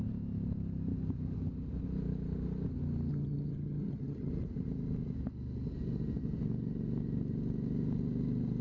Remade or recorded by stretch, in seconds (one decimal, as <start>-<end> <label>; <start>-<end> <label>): 0.0-3.1 recorded; 3.1-4.3 remade; 4.3-8.6 recorded